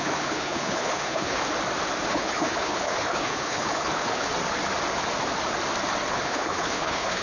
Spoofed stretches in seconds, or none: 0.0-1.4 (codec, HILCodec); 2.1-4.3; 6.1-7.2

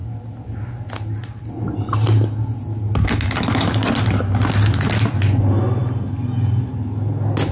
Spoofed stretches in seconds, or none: none

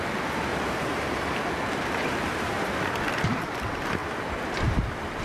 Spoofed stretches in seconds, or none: 0.5-2.8 (vocoder, BigVGAN v2); 4.0-4.8

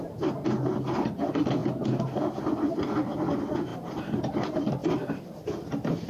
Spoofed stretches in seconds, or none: 3.7-4.2 (vocoder, BigVGAN v2); 4.8-6.1

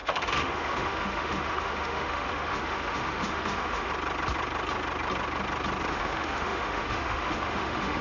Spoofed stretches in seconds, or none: 0.0-3.9 (autoencoder, DAC-VAE); 5.9-8.0

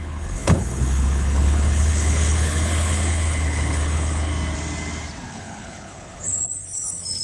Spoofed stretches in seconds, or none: 0.0-4.3 (codec, HILCodec); 5.3-7.2

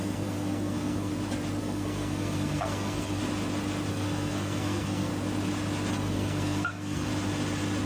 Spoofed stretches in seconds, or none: 0.0-1.1 (codec, SNAC); 1.6-3.2; 3.9-5.1; 5.9-7.1

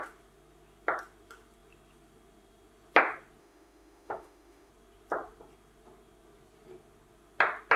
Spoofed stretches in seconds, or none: 3.4-4.7 (autoencoder, DAC-VAE)